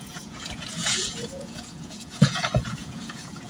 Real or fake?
fake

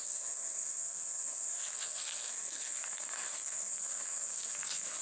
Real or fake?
fake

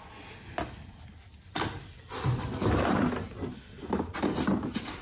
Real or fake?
real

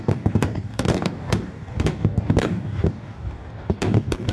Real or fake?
fake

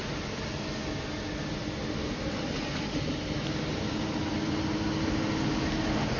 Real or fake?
real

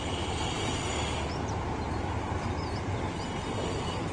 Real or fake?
real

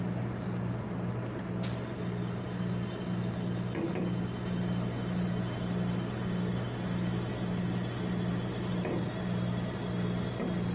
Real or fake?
real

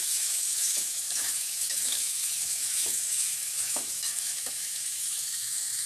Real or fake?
fake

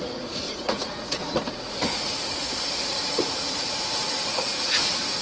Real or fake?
fake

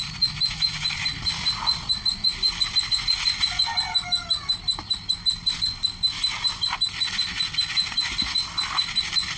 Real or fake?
real